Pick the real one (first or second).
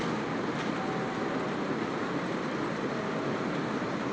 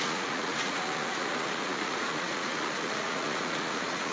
first